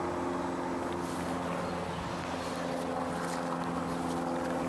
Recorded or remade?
recorded